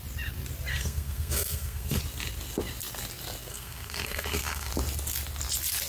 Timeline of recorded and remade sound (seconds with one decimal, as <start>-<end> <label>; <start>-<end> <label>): 0.0-0.7 recorded; 0.7-2.0 remade; 2.0-3.5 recorded; 3.5-4.7 remade; 4.7-5.9 recorded